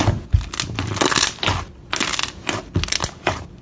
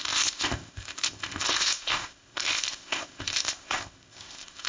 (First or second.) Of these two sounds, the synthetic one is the second